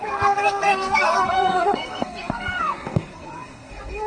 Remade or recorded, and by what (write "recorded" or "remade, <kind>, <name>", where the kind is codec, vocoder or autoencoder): remade, codec, SNAC